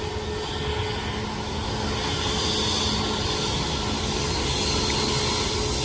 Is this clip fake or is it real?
real